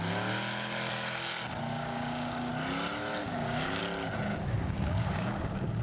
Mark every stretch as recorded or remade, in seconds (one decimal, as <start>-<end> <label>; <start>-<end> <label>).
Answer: 0.0-1.7 recorded; 1.7-2.5 remade; 2.5-3.2 recorded; 3.2-3.8 remade; 3.8-4.3 recorded; 4.3-5.8 remade